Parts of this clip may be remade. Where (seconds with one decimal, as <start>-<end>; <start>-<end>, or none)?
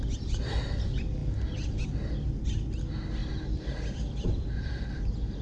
none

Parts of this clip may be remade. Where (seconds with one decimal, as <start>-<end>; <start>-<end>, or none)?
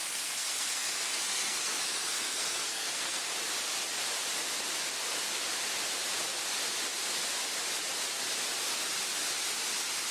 0.0-3.2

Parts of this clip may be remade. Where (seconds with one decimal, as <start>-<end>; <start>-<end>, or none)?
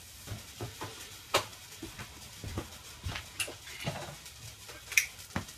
none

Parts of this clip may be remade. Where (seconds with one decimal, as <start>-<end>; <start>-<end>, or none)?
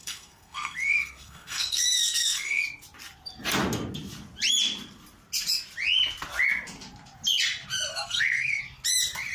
0.0-2.6; 7.9-8.6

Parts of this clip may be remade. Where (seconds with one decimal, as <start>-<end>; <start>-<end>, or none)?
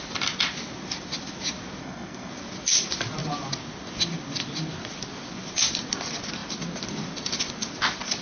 1.8-2.3